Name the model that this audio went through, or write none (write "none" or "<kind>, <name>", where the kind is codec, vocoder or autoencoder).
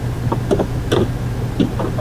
none